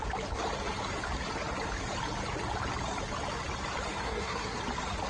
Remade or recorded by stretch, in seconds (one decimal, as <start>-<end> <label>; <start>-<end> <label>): 0.0-4.0 recorded; 4.0-4.6 remade; 4.6-5.1 recorded